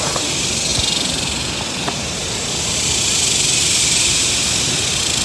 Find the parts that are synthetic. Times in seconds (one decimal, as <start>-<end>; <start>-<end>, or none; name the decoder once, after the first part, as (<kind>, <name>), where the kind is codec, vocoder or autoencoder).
0.7-3.8 (vocoder, BigVGAN v2)